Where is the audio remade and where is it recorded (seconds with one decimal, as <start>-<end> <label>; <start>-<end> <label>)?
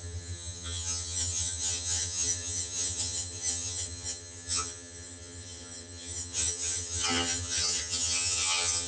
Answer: 0.0-8.9 remade